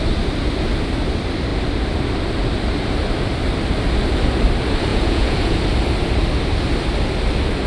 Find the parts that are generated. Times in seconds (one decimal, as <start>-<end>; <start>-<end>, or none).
4.9-5.6